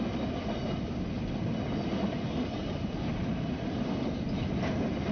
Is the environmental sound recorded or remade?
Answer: recorded